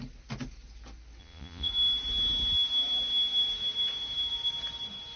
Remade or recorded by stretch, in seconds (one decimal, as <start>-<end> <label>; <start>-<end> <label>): 0.0-1.2 recorded; 1.2-1.7 remade; 1.7-5.2 recorded